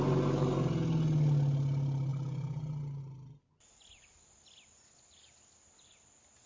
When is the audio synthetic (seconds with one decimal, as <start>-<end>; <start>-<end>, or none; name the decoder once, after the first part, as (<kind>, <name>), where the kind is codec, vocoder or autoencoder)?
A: none